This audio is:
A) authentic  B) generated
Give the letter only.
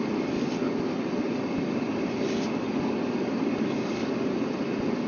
A